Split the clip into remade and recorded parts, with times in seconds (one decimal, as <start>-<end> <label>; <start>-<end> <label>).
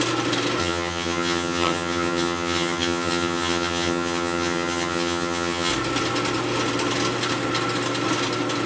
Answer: 0.0-0.6 recorded; 0.6-5.7 remade; 5.7-8.7 recorded